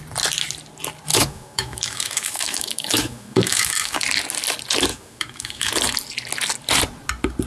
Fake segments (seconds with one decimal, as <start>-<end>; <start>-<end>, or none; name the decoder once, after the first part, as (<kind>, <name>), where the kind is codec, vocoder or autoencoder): 1.1-4.0 (autoencoder, DAC-VAE); 4.9-5.7